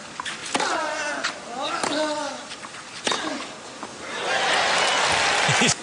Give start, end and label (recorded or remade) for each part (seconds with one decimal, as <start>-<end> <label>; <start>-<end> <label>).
0.0-5.8 recorded